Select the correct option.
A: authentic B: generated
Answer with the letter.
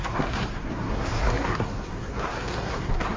B